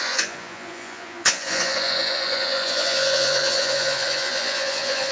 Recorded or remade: remade